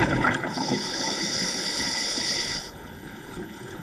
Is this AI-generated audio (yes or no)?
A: yes